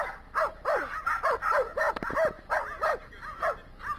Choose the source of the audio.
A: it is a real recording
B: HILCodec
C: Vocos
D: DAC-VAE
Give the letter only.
A